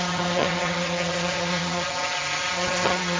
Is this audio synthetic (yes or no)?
yes